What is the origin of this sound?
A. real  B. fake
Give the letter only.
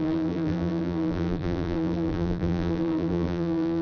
B